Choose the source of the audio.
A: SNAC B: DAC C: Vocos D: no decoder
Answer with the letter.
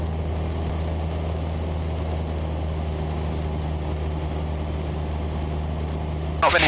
D